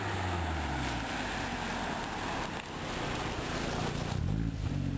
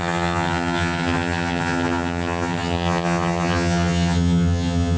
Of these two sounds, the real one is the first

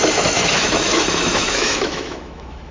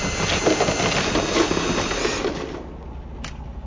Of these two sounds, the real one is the second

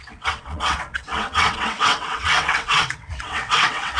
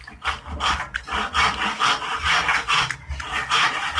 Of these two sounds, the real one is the second